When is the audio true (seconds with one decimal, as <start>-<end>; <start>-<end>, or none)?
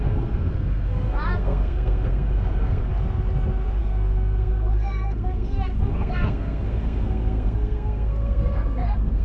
2.9-3.8